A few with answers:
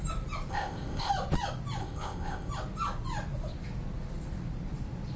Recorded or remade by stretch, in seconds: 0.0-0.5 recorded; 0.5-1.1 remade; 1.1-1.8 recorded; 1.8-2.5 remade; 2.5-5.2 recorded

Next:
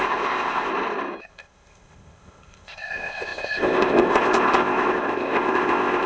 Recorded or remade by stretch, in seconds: 0.0-0.7 remade; 0.7-1.2 recorded; 1.2-6.1 remade

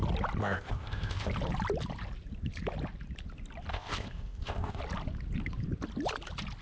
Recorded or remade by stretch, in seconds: 0.0-0.4 recorded; 0.4-1.3 remade; 1.3-3.7 recorded; 3.7-4.8 remade; 4.8-6.6 recorded

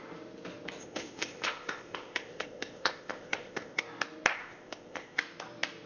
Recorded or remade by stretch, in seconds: 0.0-0.8 recorded; 0.8-3.8 remade; 3.8-4.3 recorded; 4.3-5.2 remade; 5.2-5.9 recorded

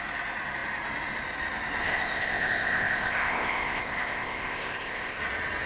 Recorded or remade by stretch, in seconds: 0.0-1.8 recorded; 1.8-5.2 remade; 5.2-5.7 recorded

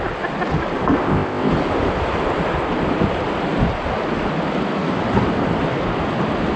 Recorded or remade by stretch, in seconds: 0.0-1.0 recorded; 1.0-1.5 remade; 1.5-6.6 recorded

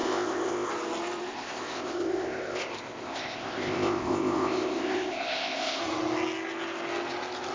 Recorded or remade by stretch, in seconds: 0.0-0.7 remade; 0.7-1.3 recorded; 1.3-5.8 remade; 5.8-7.5 recorded

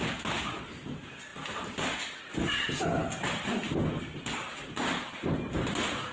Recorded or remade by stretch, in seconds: 0.0-6.1 recorded